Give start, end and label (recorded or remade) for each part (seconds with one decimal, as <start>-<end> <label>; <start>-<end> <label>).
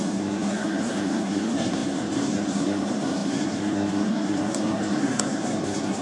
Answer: 0.0-6.0 remade